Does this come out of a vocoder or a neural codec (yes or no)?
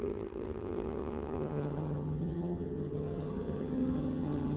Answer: yes